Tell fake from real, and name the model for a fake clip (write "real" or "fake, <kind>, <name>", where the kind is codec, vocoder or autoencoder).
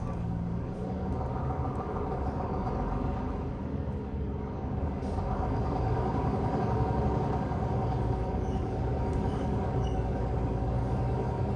fake, codec, DAC